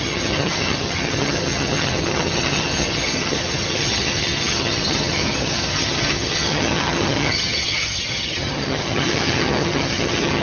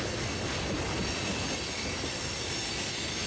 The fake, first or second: first